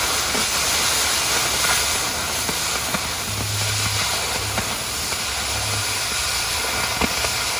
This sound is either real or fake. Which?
real